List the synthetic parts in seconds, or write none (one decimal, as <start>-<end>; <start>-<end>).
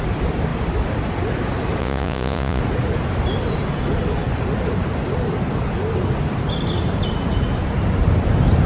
1.8-2.6